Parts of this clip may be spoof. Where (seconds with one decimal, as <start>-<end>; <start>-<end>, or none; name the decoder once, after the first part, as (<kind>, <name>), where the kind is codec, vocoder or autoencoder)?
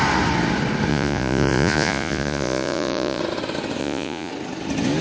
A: 0.9-3.2 (vocoder, Vocos); 3.8-4.3